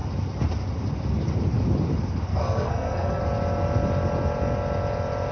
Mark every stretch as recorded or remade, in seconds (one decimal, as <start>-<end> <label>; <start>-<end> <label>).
0.0-2.3 recorded; 2.3-3.2 remade; 3.2-5.3 recorded